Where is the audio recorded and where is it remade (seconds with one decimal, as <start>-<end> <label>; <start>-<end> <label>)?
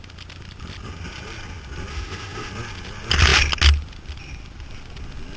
0.0-1.9 recorded; 1.9-2.5 remade; 2.5-5.4 recorded